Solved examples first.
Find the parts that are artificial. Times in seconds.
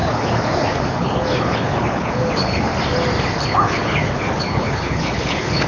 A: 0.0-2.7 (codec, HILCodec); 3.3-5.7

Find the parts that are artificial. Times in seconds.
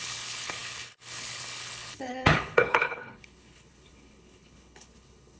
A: 0.0-5.4 (codec, HILCodec)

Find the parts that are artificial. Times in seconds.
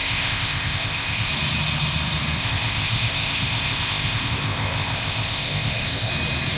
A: 0.0-1.3 (codec, ZipCodec); 2.4-6.1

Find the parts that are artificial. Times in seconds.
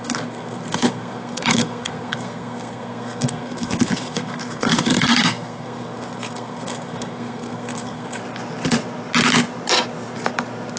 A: 0.0-8.2 (codec, SNAC)